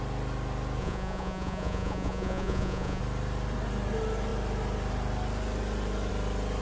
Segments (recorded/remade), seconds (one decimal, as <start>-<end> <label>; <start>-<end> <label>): 0.0-0.8 recorded; 0.8-3.0 remade; 3.0-6.6 recorded